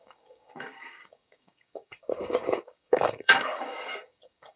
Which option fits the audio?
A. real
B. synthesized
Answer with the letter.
B